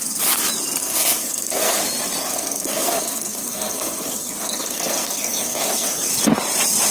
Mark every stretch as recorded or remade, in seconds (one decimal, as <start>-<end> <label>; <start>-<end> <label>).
0.0-0.8 recorded; 0.8-1.8 remade; 1.8-2.2 recorded; 2.2-6.1 remade; 6.1-6.9 recorded